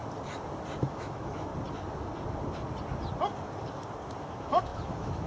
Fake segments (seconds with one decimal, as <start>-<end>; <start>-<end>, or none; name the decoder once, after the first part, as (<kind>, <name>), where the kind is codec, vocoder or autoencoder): 0.8-1.5 (autoencoder, DAC-VAE); 4.2-5.3